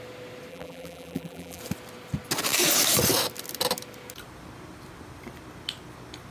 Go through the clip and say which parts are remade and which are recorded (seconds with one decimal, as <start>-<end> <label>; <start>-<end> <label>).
0.0-0.5 recorded; 0.5-1.6 remade; 1.6-6.3 recorded

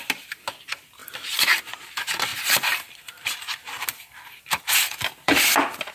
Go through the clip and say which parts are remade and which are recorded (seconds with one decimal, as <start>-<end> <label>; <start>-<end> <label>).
0.0-1.0 recorded; 1.0-1.6 remade; 1.6-2.3 recorded; 2.3-5.4 remade; 5.4-5.9 recorded

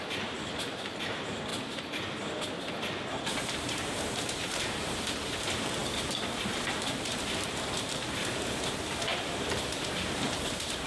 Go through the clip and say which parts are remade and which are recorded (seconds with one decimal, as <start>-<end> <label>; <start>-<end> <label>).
0.0-1.5 remade; 1.5-3.2 recorded; 3.2-10.9 remade

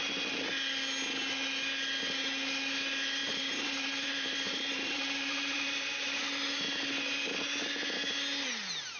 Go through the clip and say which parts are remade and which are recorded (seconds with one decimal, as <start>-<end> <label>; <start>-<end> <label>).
0.0-3.2 recorded; 3.2-6.2 remade; 6.2-9.0 recorded

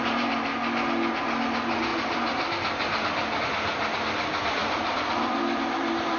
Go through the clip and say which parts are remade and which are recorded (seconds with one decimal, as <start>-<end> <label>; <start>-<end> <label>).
0.0-0.5 remade; 0.5-1.1 recorded; 1.1-1.9 remade; 1.9-3.4 recorded; 3.4-6.2 remade

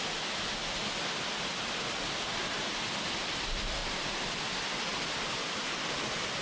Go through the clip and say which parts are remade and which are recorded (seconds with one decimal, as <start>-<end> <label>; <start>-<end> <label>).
0.0-3.8 recorded; 3.8-4.4 remade; 4.4-6.4 recorded